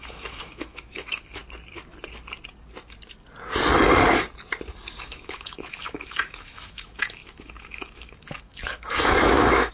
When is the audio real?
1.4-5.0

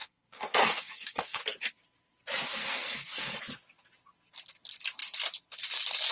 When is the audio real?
1.4-2.5; 3.4-6.1

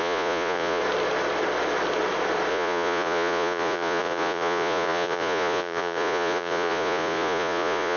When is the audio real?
0.8-2.5

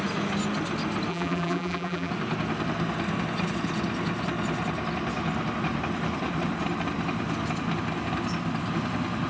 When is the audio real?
0.0-1.1; 2.1-9.3

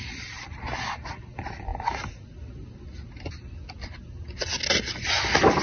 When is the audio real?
0.0-5.6

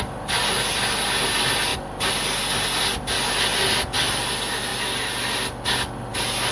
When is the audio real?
0.0-6.5

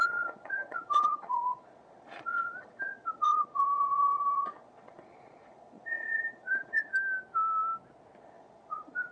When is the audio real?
6.9-8.2